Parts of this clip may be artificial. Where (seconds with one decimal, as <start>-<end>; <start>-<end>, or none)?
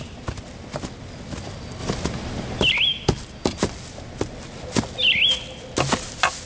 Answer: none